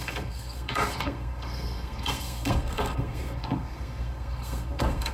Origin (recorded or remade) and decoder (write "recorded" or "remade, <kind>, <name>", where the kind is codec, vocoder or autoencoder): remade, codec, SNAC